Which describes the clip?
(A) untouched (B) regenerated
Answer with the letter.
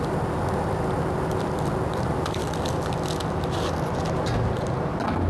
A